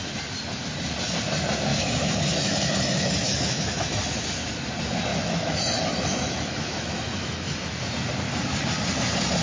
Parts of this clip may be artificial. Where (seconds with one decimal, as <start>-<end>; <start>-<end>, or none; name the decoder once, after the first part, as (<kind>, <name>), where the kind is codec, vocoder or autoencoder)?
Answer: 1.7-3.8 (autoencoder, DAC-VAE); 5.1-7.8